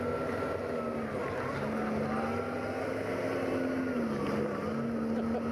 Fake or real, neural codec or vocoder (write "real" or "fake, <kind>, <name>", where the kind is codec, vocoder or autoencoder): real